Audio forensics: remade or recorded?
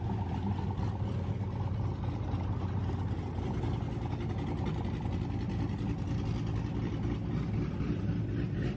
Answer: recorded